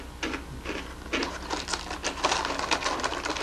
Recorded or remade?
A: recorded